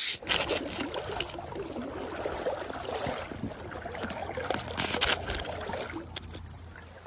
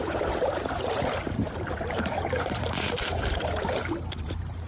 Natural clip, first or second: first